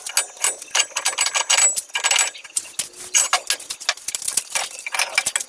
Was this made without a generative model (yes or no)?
yes